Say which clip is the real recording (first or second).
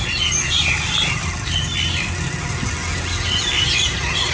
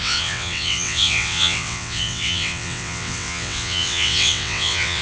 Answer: first